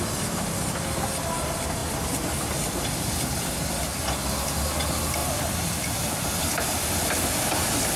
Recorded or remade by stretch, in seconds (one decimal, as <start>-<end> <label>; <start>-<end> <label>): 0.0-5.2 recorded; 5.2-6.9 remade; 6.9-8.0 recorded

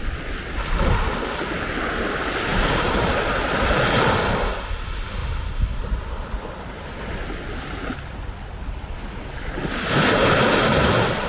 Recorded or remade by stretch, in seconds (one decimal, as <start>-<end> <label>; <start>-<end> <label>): 0.0-2.5 recorded; 2.5-3.6 remade; 3.6-5.2 recorded; 5.2-9.9 remade; 9.9-11.3 recorded

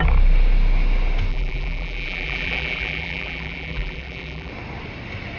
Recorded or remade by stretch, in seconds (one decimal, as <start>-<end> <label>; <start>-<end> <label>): 0.0-1.3 recorded; 1.3-4.5 remade; 4.5-5.4 recorded

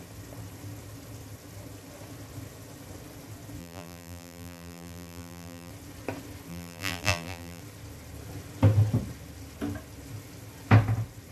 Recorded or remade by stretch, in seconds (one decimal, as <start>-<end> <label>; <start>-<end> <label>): 0.0-3.6 recorded; 3.6-5.7 remade; 5.7-6.5 recorded; 6.5-7.6 remade; 7.6-11.3 recorded

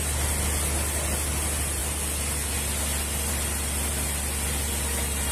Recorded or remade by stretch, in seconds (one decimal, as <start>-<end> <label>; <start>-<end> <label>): 0.0-5.3 recorded

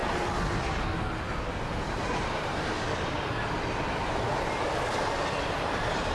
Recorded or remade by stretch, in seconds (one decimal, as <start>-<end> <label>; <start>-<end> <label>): 0.0-6.1 recorded

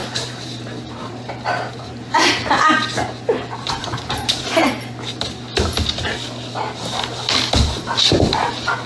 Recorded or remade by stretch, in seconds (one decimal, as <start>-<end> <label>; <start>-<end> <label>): 0.0-4.5 remade; 4.5-8.9 recorded